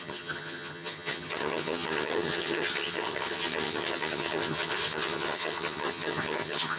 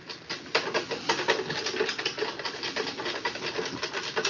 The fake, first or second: first